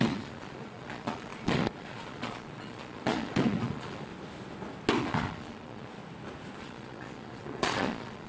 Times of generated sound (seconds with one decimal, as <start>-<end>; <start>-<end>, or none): 0.0-4.1; 5.0-6.0; 6.6-8.3